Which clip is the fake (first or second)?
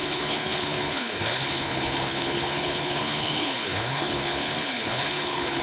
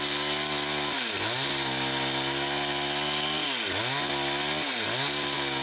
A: first